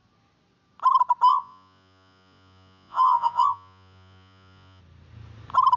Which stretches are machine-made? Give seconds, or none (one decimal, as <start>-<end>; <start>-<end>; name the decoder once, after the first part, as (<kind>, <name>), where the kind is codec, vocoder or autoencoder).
1.3-4.8 (vocoder, Vocos)